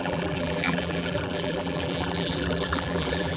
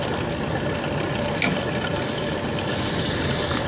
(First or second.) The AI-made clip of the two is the first